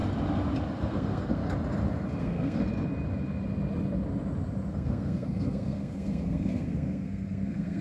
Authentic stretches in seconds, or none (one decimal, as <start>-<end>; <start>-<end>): 0.0-0.8; 1.4-2.2; 2.6-4.7